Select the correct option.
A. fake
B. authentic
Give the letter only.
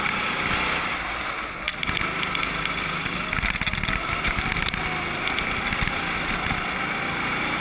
B